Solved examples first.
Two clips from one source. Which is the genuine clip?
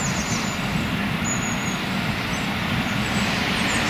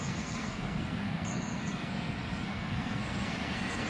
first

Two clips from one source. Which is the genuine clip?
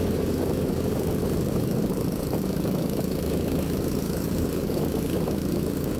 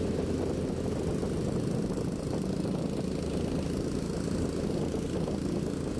second